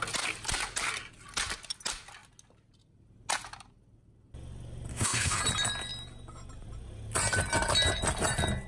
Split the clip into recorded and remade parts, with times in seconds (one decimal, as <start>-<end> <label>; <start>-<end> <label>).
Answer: 0.0-4.9 recorded; 4.9-5.4 remade; 5.4-8.7 recorded